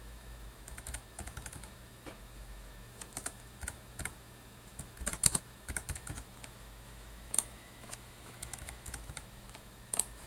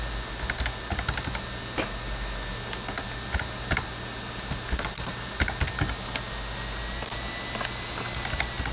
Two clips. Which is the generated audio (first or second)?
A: first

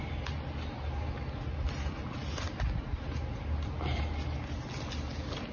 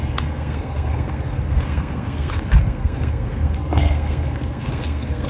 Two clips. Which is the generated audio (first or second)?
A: second